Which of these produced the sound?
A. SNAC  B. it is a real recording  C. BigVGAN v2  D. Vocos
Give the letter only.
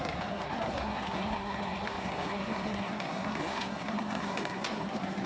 A